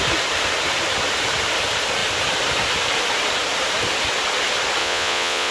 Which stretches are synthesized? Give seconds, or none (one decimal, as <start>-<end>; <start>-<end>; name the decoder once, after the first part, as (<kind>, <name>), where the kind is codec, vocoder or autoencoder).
4.8-5.5 (vocoder, Vocos)